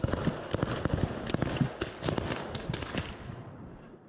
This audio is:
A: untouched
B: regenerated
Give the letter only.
A